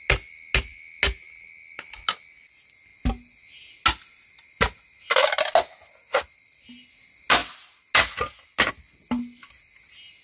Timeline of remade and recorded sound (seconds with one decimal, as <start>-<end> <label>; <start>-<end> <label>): 0.0-10.2 recorded